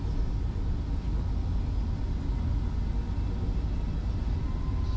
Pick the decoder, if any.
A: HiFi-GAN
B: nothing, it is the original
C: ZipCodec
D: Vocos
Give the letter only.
B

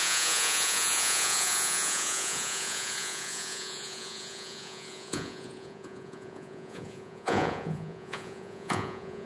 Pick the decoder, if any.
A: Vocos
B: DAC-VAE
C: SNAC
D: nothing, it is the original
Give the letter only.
A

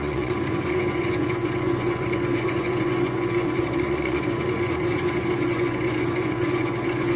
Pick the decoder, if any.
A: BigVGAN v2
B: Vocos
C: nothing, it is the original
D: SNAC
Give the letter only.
B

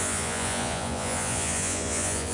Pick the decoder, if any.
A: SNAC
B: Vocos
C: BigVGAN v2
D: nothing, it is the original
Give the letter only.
B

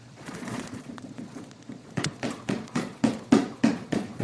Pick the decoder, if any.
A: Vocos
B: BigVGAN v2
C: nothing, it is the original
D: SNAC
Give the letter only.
A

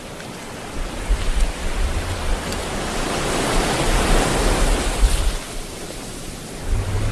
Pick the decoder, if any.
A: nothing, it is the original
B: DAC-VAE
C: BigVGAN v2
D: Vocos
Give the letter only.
A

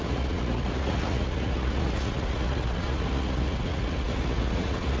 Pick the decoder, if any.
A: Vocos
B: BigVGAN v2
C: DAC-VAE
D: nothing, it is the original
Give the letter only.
A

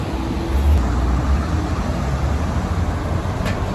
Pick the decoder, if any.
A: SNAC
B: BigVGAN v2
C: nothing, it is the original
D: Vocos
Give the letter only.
C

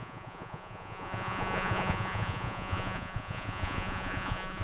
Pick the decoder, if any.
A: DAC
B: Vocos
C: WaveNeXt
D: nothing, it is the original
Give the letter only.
B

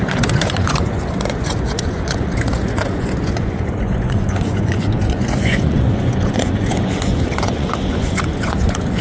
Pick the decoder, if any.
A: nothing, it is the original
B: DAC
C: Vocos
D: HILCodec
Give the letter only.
C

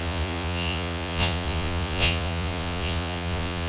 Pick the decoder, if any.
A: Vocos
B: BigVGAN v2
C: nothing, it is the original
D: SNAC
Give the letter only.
A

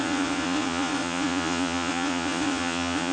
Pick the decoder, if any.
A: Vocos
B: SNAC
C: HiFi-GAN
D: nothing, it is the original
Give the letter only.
A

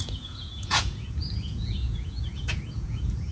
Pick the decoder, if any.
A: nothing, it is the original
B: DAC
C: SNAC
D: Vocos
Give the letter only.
D